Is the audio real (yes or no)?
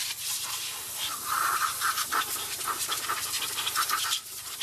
yes